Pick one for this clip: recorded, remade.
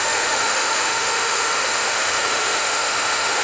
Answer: remade